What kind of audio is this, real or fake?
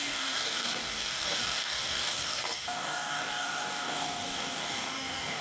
fake